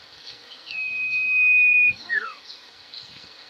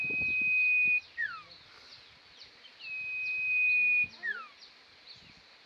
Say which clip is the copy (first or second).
first